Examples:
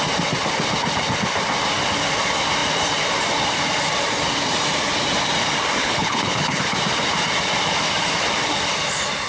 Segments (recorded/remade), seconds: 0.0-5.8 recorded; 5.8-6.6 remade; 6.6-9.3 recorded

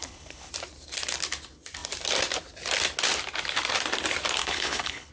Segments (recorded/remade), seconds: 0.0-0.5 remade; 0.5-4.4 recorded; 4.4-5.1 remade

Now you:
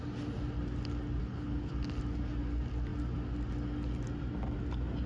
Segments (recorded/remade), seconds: 0.0-1.2 recorded; 1.2-1.7 remade; 1.7-5.1 recorded